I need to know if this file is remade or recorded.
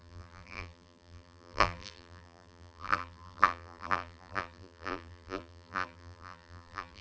remade